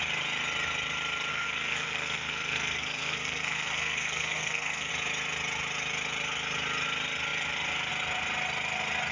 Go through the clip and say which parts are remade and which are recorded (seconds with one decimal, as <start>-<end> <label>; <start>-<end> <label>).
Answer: 0.0-1.3 recorded; 1.3-4.9 remade; 4.9-9.1 recorded